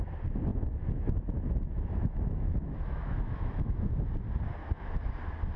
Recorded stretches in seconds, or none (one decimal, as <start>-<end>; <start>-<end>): 0.0-0.5; 3.9-4.6; 5.1-5.6